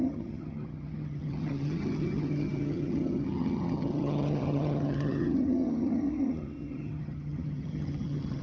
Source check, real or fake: fake